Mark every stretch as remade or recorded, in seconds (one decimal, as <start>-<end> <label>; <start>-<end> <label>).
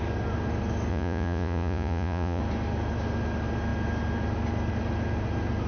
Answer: 0.0-0.9 recorded; 0.9-2.4 remade; 2.4-5.7 recorded